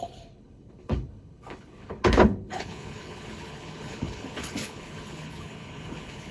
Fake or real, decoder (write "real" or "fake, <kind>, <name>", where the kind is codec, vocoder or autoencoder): fake, codec, HILCodec